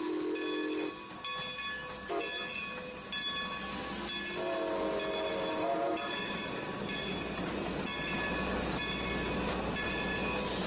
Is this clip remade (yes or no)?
no